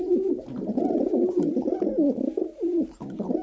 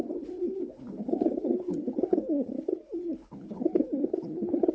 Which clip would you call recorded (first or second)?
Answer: first